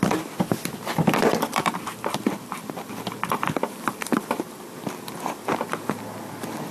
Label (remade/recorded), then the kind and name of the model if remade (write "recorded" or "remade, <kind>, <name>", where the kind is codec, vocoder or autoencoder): remade, vocoder, BigVGAN v2